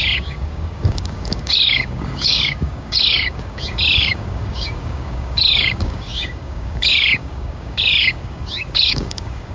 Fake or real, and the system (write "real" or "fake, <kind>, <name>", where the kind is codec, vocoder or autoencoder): fake, codec, DAC